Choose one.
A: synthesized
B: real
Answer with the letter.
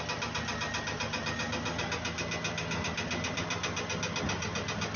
B